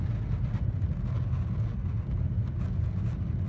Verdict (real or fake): real